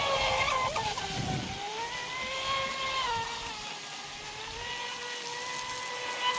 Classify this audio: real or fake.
real